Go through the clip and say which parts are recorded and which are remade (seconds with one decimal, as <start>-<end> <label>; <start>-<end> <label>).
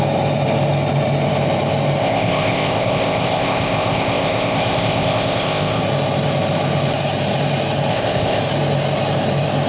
0.0-2.0 recorded; 2.0-5.8 remade; 5.8-7.9 recorded; 7.9-8.4 remade; 8.4-9.7 recorded